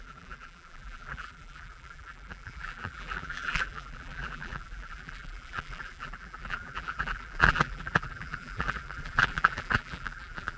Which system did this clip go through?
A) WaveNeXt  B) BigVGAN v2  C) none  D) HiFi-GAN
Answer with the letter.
B